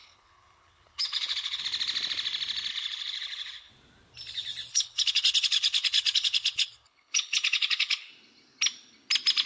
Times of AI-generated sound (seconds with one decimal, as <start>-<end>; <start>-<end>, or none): 0.0-1.6; 2.7-3.7; 4.7-8.1